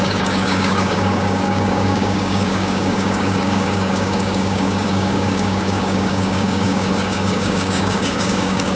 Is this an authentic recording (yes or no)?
no